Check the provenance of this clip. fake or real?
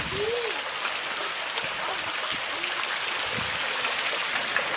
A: real